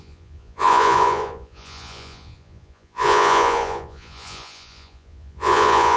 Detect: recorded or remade remade